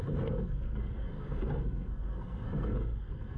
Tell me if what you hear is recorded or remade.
remade